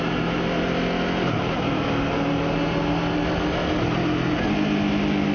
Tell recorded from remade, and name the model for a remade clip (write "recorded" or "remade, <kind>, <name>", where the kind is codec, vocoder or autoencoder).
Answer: recorded